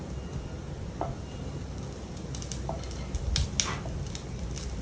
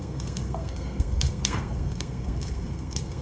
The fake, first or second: second